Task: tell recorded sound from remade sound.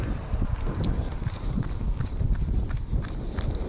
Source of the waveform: remade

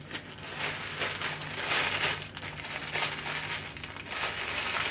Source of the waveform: recorded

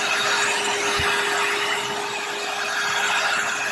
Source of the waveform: recorded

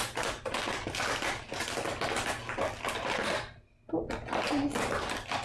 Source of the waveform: recorded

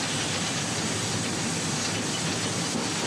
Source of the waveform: recorded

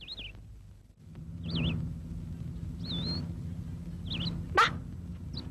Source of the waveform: recorded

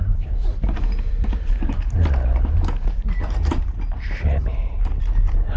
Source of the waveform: recorded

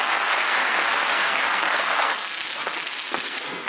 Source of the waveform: remade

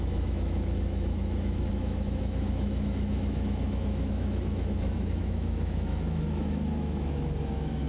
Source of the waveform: remade